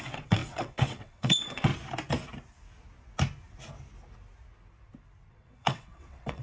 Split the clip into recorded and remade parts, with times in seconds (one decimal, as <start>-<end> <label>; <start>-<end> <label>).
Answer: 0.0-1.7 remade; 1.7-5.3 recorded; 5.3-6.4 remade